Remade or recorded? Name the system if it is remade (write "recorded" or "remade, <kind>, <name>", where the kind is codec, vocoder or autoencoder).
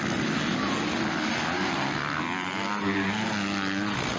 recorded